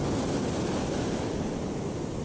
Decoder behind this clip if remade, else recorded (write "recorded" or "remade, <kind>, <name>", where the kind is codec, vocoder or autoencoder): recorded